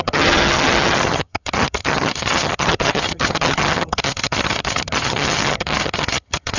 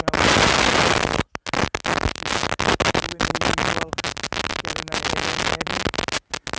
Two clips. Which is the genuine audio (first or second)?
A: second